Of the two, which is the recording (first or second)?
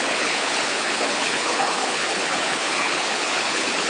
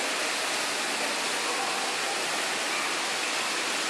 second